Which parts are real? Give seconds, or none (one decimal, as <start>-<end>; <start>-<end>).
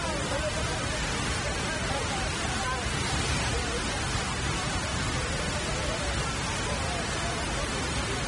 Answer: 0.0-8.3